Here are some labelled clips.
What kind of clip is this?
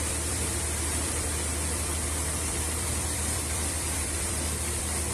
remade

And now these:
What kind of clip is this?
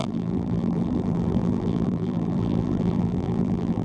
remade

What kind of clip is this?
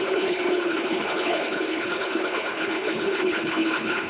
remade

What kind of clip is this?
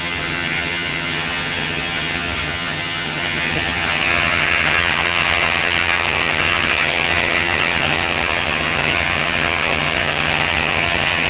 remade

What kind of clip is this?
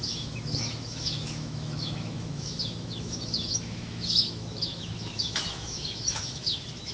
remade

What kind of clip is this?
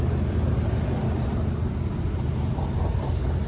recorded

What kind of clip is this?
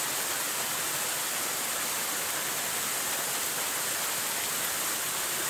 recorded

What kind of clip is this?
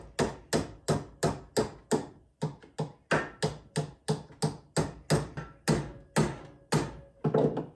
recorded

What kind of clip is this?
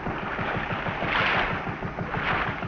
recorded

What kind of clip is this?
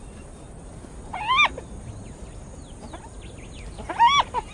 recorded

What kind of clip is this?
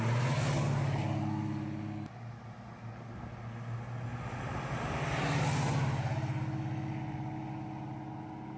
recorded